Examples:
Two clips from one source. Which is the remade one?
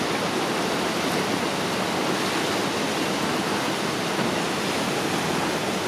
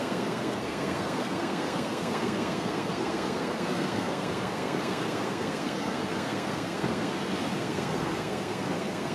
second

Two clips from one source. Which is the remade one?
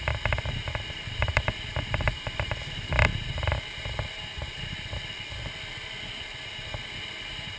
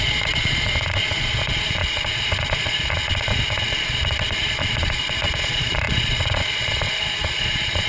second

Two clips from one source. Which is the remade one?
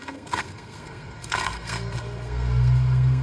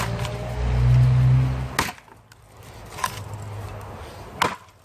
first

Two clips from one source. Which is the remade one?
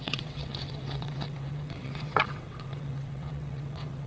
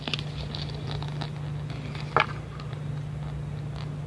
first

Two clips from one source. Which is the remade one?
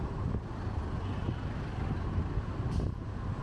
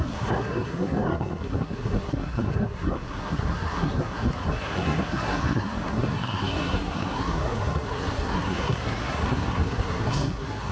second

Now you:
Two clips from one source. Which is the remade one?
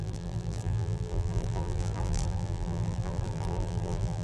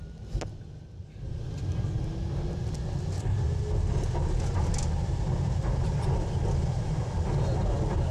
first